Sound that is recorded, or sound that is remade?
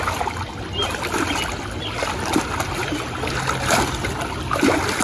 recorded